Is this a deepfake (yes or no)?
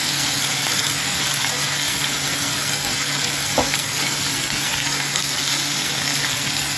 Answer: yes